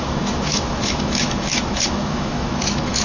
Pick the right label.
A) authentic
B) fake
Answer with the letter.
B